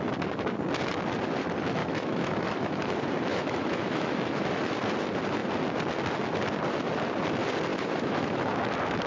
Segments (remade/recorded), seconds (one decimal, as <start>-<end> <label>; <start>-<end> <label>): 0.0-1.8 recorded; 1.8-2.9 remade; 2.9-3.3 recorded; 3.3-4.5 remade; 4.5-7.7 recorded; 7.7-8.5 remade; 8.5-9.1 recorded